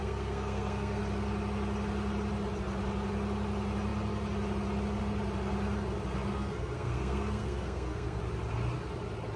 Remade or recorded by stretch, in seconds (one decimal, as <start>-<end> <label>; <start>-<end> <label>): 0.0-1.0 remade; 1.0-6.3 recorded; 6.3-8.2 remade; 8.2-9.4 recorded